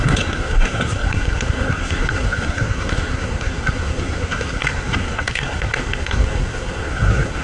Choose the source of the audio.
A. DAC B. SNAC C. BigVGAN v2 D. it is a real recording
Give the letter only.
B